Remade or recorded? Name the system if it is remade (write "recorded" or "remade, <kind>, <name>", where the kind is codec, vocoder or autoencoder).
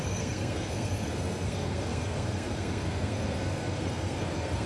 remade, codec, SNAC